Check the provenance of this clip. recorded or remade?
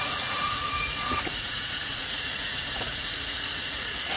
remade